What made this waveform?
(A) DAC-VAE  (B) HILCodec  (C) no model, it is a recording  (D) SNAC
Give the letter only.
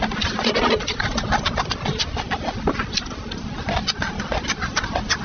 C